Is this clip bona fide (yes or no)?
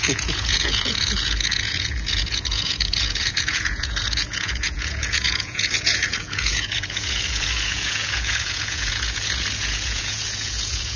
no